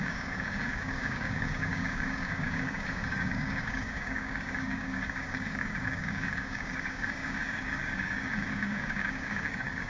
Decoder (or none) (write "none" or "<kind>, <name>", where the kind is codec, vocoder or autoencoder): codec, DAC